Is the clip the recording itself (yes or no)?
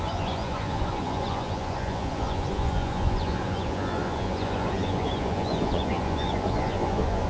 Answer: no